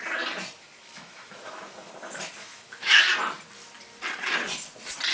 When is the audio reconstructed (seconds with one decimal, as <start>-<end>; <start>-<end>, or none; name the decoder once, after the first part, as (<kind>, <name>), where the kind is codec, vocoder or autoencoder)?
0.8-1.9 (autoencoder, DAC-VAE); 2.4-3.0